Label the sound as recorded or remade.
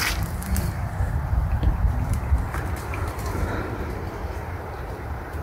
remade